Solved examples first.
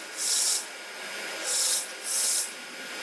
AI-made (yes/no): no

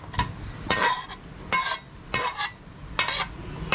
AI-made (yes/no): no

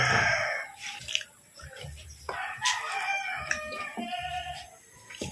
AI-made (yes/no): no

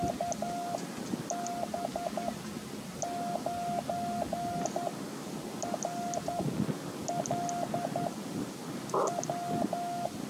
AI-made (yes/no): no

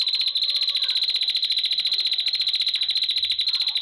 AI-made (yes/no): no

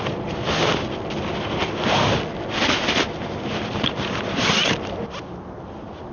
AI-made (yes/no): no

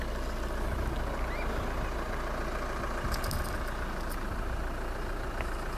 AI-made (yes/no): no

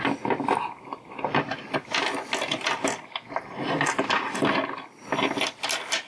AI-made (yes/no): no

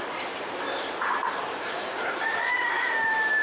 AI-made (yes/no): yes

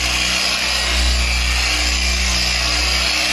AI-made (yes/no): no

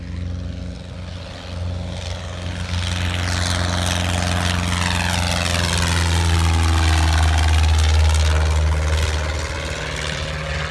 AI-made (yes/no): no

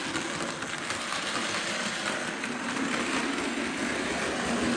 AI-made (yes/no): no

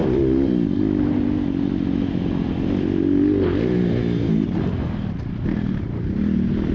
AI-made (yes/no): no